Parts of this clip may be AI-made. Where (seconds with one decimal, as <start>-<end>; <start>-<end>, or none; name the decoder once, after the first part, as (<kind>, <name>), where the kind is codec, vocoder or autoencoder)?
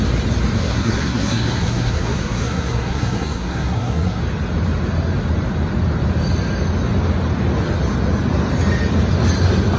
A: 0.6-4.2 (codec, SNAC)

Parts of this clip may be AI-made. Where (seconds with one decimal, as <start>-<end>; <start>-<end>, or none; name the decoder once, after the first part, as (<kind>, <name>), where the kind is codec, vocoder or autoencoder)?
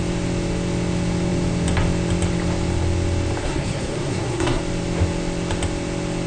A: 3.4-4.6 (codec, SNAC)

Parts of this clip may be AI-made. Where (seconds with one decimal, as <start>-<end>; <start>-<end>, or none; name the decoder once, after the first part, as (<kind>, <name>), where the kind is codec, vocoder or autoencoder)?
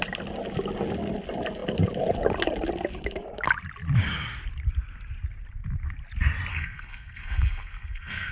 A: 6.5-8.3 (codec, SNAC)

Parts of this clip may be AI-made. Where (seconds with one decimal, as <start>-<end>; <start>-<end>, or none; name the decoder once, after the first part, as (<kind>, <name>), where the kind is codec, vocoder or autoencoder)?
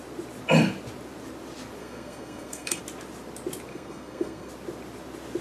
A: 1.8-2.8 (codec, SNAC); 3.7-4.5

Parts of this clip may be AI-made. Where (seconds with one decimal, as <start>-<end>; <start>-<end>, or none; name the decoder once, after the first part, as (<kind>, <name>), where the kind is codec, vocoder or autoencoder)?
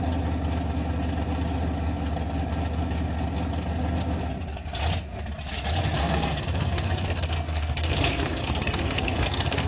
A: 6.0-9.7 (codec, SNAC)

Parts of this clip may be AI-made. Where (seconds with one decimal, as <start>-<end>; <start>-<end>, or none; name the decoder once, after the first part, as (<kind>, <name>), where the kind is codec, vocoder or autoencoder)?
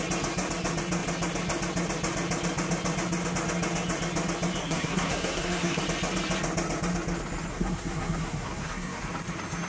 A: 4.6-5.8 (codec, SNAC); 7.5-9.0